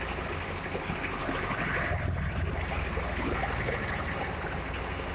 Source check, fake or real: real